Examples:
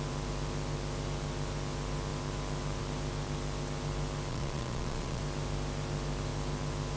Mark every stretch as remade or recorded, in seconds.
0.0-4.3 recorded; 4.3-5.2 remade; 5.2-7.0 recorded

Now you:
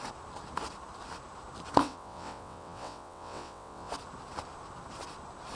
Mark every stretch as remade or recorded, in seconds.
0.0-1.8 recorded; 1.8-3.9 remade; 3.9-5.6 recorded

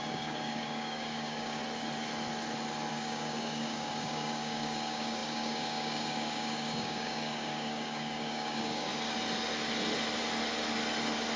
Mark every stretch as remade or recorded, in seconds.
0.0-1.6 remade; 1.6-2.9 recorded; 2.9-8.9 remade; 8.9-11.4 recorded

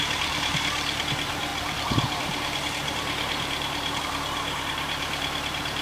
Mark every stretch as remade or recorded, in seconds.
0.0-5.8 remade

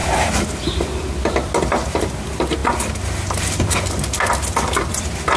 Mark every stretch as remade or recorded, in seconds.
0.0-5.4 recorded

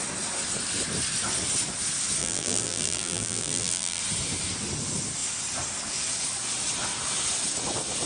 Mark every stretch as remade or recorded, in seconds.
0.0-2.2 recorded; 2.2-4.0 remade; 4.0-8.1 recorded

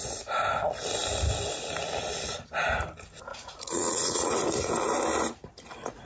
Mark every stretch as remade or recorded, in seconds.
0.0-3.3 recorded; 3.3-4.3 remade; 4.3-6.0 recorded